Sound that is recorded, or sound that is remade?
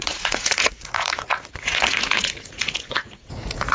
remade